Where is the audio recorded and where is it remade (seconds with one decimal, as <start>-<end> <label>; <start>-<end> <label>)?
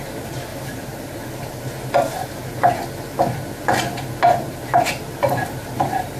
0.0-0.5 remade; 0.5-4.2 recorded; 4.2-6.2 remade